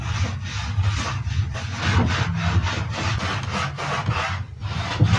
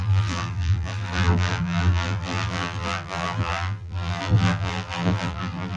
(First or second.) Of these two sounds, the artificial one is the second